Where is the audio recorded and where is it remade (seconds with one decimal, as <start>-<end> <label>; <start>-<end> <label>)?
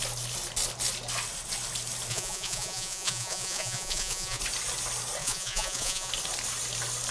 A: 0.0-2.1 recorded; 2.1-4.4 remade; 4.4-5.2 recorded; 5.2-6.1 remade; 6.1-7.1 recorded